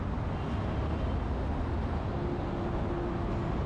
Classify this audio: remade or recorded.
recorded